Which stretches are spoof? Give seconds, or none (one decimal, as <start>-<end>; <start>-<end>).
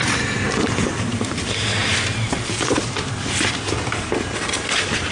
0.0-1.8; 3.0-5.1